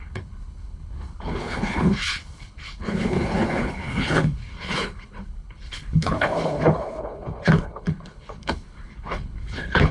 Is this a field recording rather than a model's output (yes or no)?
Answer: no